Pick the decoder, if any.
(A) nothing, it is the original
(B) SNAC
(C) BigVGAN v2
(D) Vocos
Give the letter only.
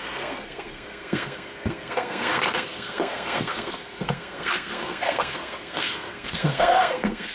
B